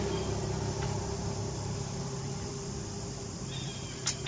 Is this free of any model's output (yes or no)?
yes